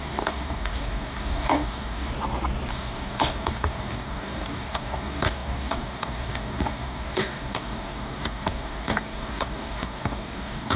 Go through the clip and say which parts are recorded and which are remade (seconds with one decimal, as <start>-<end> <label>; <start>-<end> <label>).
0.0-2.1 remade; 2.1-2.7 recorded; 2.7-10.8 remade